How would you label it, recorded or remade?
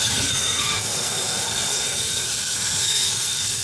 remade